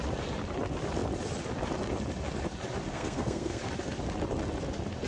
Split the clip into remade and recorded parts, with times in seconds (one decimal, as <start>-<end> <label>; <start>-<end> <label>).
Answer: 0.0-2.9 recorded; 2.9-3.6 remade; 3.6-5.1 recorded